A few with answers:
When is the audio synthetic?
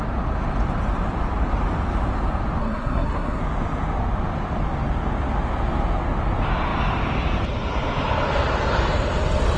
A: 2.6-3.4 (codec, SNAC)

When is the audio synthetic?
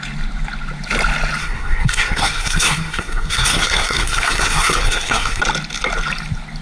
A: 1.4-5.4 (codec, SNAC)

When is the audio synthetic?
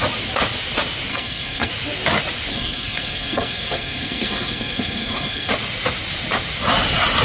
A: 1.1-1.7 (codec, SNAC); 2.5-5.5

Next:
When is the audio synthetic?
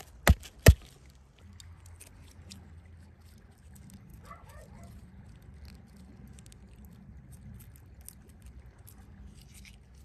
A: none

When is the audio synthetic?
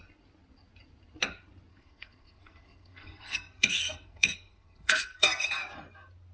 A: 1.7-5.5 (codec, SNAC)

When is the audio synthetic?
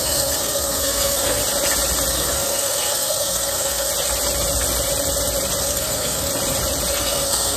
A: 0.0-1.4 (codec, SNAC); 2.1-3.9; 5.6-6.3; 7.0-7.6